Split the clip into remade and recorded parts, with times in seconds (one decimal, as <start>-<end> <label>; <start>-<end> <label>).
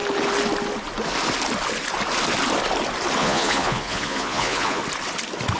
0.0-3.2 recorded; 3.2-4.8 remade; 4.8-5.6 recorded